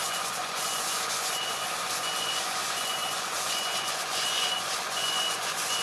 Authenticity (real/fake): fake